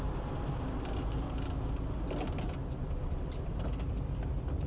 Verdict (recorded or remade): recorded